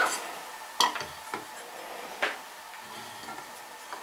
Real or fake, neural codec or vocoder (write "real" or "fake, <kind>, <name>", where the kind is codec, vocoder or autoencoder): real